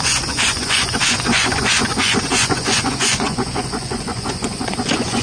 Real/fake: fake